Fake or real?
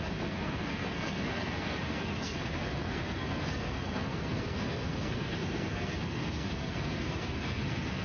fake